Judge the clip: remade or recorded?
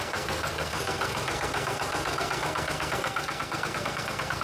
remade